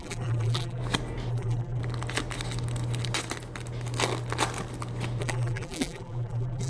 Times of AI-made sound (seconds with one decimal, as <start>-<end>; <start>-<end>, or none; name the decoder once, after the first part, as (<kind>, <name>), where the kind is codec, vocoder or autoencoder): 0.0-0.8 (vocoder, BigVGAN v2); 1.3-1.8; 5.2-6.7